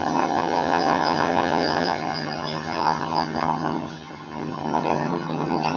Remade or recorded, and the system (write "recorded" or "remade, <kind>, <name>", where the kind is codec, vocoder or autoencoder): remade, vocoder, HiFi-GAN